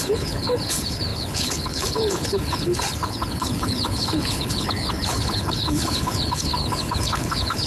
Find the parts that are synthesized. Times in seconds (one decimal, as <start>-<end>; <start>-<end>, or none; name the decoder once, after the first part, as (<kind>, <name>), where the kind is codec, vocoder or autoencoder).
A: 0.0-7.7 (codec, HILCodec)

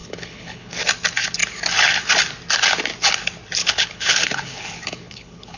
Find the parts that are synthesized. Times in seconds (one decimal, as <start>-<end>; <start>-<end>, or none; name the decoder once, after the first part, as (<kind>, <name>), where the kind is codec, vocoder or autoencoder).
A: 0.0-0.8 (codec, HILCodec); 3.6-5.6

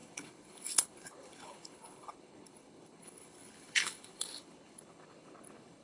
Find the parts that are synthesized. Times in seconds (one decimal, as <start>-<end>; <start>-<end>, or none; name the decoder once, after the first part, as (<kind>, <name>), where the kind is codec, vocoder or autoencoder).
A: 0.0-5.8 (codec, HILCodec)

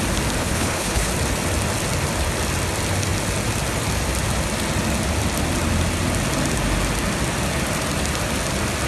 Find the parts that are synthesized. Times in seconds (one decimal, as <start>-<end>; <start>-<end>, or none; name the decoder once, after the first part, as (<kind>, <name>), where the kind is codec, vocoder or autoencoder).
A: 0.4-1.1 (codec, HILCodec)

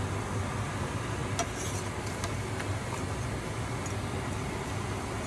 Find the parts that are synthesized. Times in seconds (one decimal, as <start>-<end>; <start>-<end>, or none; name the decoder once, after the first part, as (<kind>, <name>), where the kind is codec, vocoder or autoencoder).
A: none

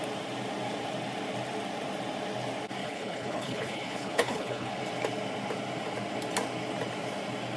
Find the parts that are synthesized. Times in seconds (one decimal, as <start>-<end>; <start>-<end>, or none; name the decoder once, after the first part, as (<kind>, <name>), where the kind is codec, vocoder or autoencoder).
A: 2.8-4.7 (codec, HILCodec)

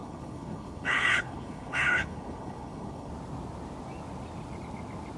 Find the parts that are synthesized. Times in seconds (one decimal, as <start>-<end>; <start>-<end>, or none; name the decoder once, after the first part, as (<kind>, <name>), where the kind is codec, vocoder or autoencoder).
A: 0.0-3.1 (codec, HILCodec)